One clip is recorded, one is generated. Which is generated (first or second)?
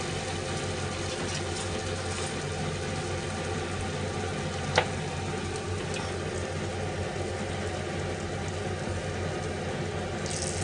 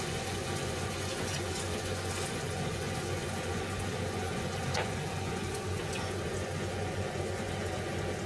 second